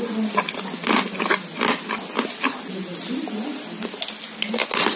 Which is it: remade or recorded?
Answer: recorded